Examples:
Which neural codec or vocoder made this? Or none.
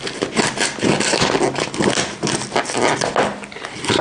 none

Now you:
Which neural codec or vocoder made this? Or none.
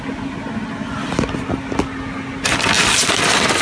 none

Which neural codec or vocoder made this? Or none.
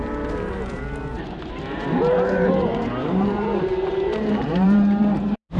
vocoder, BigVGAN v2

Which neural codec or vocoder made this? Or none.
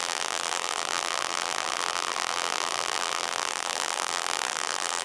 vocoder, BigVGAN v2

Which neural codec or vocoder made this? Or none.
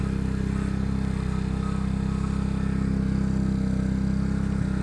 none